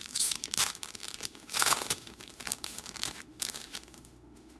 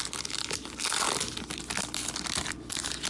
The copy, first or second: first